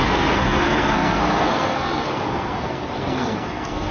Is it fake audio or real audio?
fake